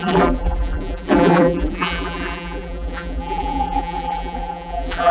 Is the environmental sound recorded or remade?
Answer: remade